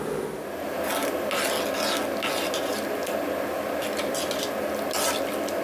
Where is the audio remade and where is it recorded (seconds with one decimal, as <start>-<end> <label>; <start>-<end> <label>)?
0.0-5.6 recorded